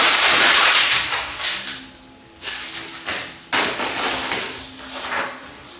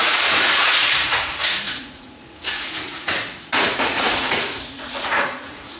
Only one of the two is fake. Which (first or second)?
second